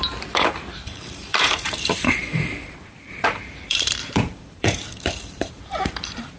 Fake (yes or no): yes